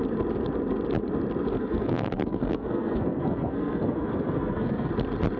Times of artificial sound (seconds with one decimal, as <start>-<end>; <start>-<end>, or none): 1.7-4.9